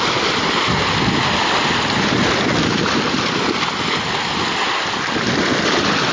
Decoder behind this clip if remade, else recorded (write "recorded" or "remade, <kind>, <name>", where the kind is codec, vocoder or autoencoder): recorded